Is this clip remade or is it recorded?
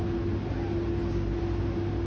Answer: recorded